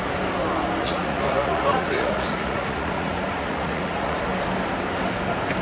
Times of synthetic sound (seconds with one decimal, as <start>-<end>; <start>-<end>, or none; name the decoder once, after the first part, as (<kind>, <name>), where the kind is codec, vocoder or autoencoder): 0.8-4.2 (vocoder, Vocos)